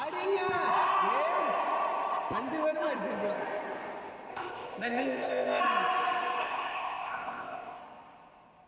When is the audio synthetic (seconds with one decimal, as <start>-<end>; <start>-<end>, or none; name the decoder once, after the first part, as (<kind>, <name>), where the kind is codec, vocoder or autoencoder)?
4.3-5.6 (codec, ZipCodec); 6.4-7.8